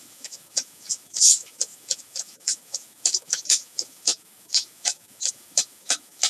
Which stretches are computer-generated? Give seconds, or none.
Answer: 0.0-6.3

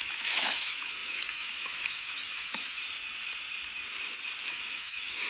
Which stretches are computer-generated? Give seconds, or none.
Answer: 0.0-2.8; 4.5-5.3

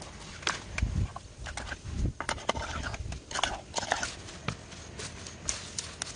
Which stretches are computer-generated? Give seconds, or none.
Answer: none

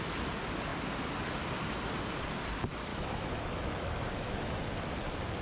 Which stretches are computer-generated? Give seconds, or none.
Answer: 2.9-4.6

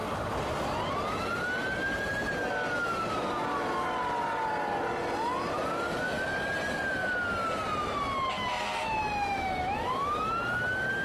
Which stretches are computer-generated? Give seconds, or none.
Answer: 9.3-10.3

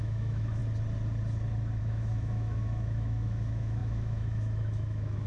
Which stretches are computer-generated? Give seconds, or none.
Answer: 0.0-0.6; 1.8-5.3